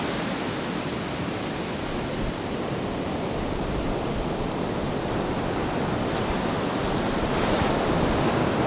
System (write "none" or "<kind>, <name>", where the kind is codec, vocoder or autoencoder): none